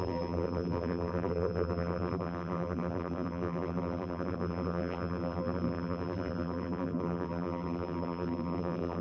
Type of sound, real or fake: fake